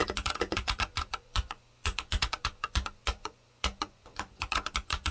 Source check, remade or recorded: remade